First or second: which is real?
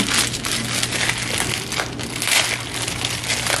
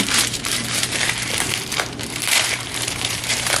first